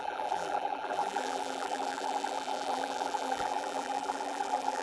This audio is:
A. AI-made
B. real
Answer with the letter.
A